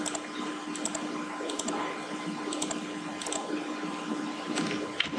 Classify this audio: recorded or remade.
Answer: recorded